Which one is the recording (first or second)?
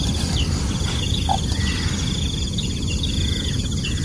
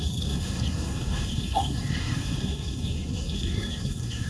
first